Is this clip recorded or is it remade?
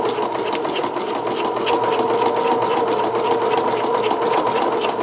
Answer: recorded